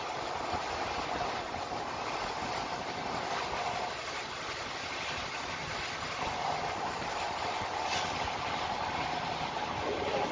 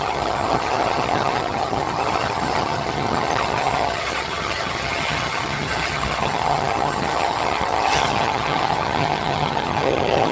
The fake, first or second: second